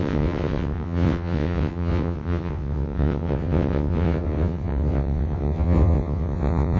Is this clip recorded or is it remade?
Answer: remade